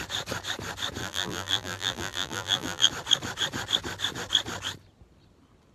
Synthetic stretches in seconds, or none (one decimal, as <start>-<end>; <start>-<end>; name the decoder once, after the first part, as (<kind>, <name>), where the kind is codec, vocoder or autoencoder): 1.0-2.9 (vocoder, BigVGAN v2)